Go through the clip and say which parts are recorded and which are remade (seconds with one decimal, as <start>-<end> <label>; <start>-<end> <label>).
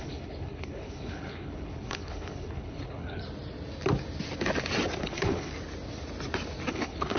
0.0-3.2 remade; 3.2-5.0 recorded; 5.0-5.5 remade; 5.5-6.7 recorded; 6.7-7.2 remade